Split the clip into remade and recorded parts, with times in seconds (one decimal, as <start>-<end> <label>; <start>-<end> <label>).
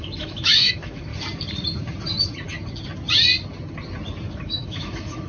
0.0-1.1 remade; 1.1-4.3 recorded; 4.3-5.3 remade